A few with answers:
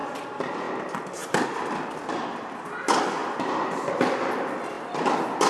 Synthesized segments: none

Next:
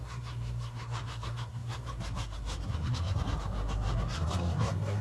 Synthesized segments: 0.0-5.0 (codec, SNAC)